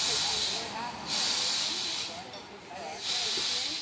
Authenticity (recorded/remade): recorded